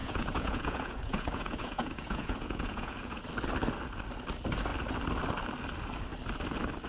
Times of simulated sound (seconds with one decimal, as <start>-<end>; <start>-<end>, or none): 0.0-3.2